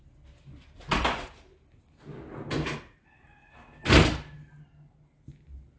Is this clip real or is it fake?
real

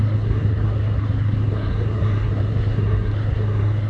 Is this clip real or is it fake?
fake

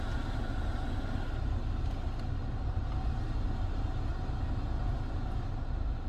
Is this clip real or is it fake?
real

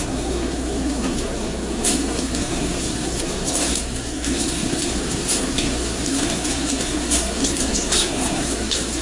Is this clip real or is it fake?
fake